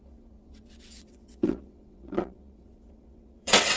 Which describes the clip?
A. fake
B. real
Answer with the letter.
A